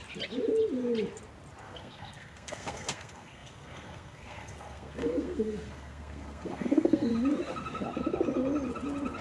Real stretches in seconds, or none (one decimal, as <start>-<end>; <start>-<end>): 0.0-1.6; 7.1-9.2